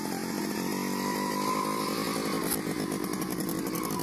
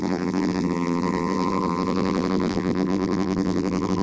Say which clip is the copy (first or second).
second